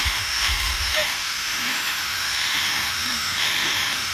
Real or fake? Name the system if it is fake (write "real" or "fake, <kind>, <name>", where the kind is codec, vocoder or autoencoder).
fake, autoencoder, DAC-VAE